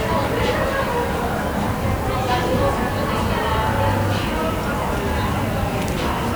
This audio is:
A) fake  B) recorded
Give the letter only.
B